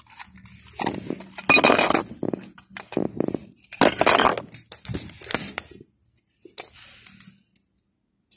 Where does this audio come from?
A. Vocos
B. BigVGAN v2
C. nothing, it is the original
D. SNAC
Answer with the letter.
C